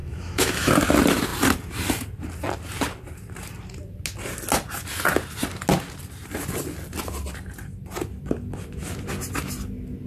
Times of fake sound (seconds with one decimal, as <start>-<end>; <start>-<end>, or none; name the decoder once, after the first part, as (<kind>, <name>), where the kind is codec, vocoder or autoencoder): 0.0-0.7 (autoencoder, DAC-VAE)